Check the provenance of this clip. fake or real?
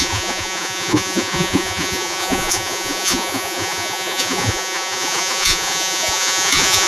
fake